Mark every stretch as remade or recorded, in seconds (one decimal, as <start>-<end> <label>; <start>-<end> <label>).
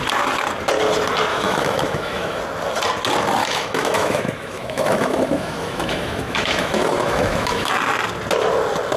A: 0.0-1.3 recorded; 1.3-2.4 remade; 2.4-3.4 recorded; 3.4-7.7 remade; 7.7-9.0 recorded